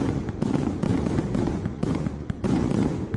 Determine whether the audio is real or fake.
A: fake